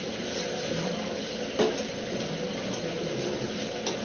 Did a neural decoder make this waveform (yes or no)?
no